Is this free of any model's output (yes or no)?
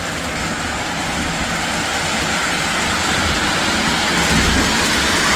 no